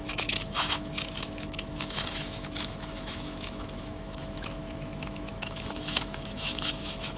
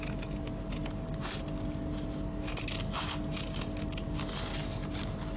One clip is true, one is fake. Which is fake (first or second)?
first